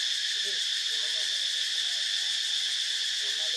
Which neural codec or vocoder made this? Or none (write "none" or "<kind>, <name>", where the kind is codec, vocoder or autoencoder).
none